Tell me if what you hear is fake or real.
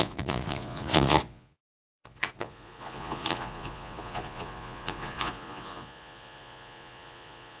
fake